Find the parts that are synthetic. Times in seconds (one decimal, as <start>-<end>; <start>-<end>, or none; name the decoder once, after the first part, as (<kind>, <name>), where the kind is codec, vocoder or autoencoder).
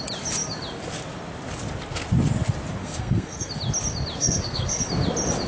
2.8-3.5 (codec, SNAC); 4.2-4.8